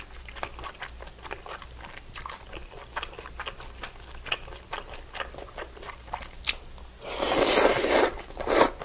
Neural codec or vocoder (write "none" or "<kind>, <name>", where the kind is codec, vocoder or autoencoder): none